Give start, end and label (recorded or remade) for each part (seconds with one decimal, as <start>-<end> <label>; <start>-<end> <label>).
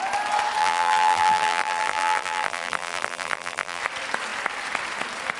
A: 0.0-0.6 recorded; 0.6-3.8 remade; 3.8-5.4 recorded